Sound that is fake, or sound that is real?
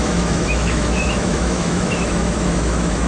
fake